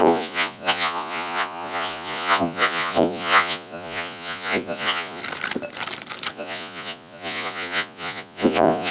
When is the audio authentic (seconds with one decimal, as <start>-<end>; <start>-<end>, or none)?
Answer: 5.2-6.3